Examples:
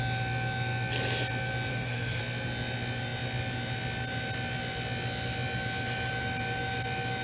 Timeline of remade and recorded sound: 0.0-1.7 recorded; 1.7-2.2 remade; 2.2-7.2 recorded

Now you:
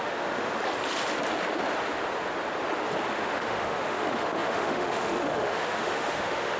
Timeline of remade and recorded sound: 0.0-0.5 remade; 0.5-3.1 recorded; 3.1-6.6 remade

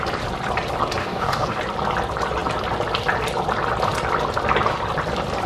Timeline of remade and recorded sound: 0.0-1.0 recorded; 1.0-1.6 remade; 1.6-5.5 recorded